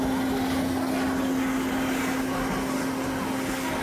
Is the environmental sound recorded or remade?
recorded